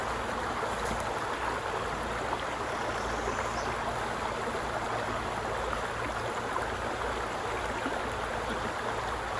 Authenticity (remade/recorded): recorded